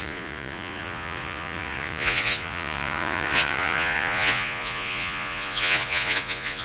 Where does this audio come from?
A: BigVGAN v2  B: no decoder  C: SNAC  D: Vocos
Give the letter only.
D